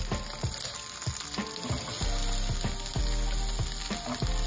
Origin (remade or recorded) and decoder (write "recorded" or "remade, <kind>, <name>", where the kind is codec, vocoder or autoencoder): recorded